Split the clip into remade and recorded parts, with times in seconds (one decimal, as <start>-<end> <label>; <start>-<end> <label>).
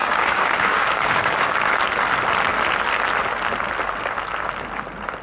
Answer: 0.0-1.8 remade; 1.8-5.2 recorded